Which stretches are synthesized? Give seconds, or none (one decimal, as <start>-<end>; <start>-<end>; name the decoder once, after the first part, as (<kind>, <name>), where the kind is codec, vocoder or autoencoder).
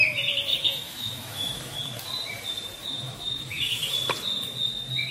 0.5-1.8 (autoencoder, DAC-VAE); 2.8-3.8